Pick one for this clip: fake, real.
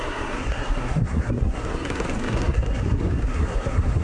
fake